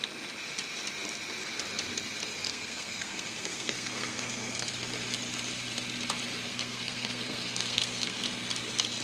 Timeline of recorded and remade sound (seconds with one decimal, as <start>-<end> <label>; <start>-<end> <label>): 0.0-2.5 recorded; 2.5-4.7 remade; 4.7-6.5 recorded; 6.5-8.2 remade; 8.2-9.0 recorded